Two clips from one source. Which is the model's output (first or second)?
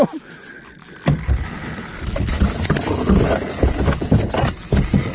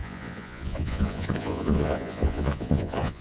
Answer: second